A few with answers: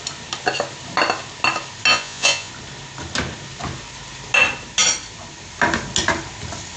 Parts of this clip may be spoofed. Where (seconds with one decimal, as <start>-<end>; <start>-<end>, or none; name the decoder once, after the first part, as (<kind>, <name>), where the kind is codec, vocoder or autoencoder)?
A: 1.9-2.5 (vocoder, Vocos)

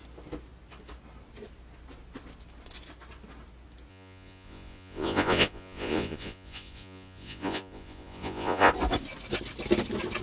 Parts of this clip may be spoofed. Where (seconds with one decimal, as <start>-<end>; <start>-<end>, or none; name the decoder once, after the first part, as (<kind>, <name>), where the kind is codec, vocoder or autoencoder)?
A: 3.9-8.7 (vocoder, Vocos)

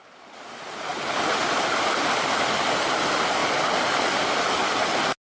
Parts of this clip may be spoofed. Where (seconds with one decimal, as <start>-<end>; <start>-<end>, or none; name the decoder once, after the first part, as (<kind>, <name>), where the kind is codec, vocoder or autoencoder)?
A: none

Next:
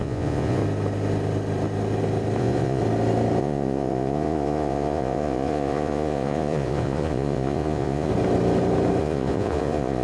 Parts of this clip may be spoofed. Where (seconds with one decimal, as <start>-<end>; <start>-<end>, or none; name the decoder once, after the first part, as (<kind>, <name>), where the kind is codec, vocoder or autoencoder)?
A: 0.0-0.6 (vocoder, Vocos); 2.4-2.8; 3.4-8.1; 9.0-10.0

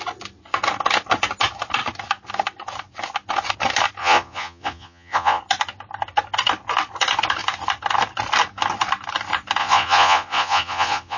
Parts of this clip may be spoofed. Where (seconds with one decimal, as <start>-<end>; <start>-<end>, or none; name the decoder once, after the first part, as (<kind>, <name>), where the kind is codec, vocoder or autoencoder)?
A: 4.0-5.4 (vocoder, Vocos); 9.6-11.2

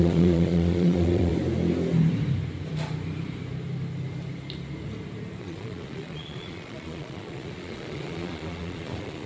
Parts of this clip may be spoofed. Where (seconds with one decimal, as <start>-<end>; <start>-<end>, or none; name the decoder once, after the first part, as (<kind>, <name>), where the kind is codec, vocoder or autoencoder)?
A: 0.0-1.3 (vocoder, Vocos); 5.4-9.3